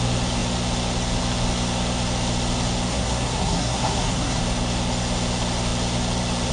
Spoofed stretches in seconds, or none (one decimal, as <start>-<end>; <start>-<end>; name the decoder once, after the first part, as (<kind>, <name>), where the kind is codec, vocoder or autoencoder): 2.9-4.4 (codec, SNAC)